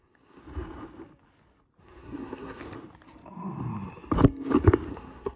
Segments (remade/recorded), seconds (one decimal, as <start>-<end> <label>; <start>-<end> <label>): 0.0-0.4 remade; 0.4-1.8 recorded; 1.8-2.6 remade; 2.6-4.9 recorded; 4.9-5.4 remade